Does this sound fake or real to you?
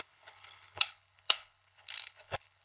fake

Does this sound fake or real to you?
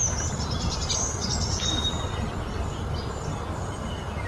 real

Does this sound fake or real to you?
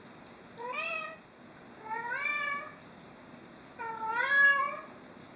real